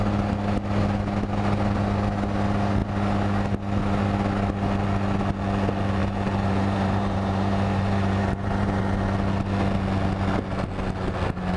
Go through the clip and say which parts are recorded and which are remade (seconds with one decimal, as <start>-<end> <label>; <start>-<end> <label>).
0.0-6.0 recorded; 6.0-8.8 remade; 8.8-11.6 recorded